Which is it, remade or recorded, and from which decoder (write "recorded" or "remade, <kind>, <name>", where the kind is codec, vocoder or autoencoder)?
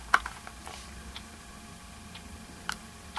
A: recorded